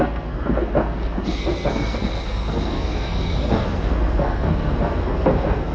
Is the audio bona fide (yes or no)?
no